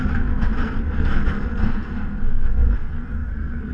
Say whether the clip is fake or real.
fake